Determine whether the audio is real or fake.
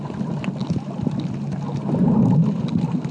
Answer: real